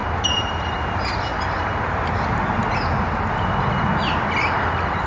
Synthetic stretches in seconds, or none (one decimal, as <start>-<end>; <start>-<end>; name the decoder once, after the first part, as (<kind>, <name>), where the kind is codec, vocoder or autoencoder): 0.0-0.8 (vocoder, BigVGAN v2); 1.3-1.8